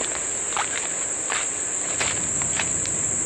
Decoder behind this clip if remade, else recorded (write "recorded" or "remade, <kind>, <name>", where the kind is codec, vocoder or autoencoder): remade, vocoder, BigVGAN v2